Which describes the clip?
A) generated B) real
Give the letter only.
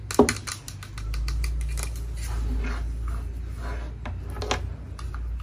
B